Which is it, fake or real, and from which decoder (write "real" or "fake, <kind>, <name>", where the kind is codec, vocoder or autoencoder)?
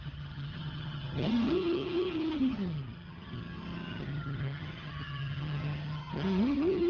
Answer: fake, vocoder, HiFi-GAN